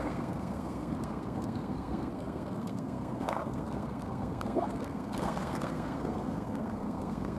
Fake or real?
fake